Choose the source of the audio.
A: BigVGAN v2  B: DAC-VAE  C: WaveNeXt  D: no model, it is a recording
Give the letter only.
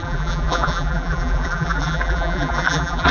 A